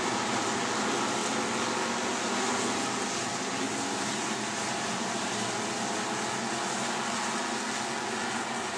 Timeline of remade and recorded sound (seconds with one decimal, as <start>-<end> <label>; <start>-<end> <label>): 0.0-8.8 recorded